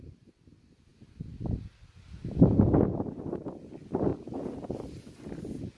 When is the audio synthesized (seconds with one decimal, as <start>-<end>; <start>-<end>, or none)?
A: none